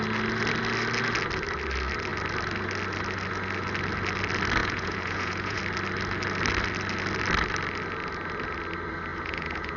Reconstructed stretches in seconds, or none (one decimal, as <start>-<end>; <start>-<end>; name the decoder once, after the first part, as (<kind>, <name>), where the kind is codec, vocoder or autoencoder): 4.6-5.6 (vocoder, Vocos); 9.1-9.8